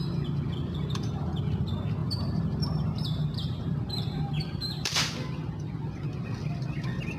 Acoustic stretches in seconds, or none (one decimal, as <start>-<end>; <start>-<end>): 0.0-2.0; 5.1-7.2